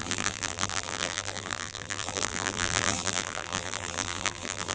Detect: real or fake fake